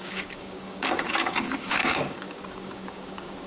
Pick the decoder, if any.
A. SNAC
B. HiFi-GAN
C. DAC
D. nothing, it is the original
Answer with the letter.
C